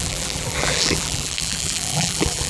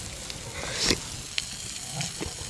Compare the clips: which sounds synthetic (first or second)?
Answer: first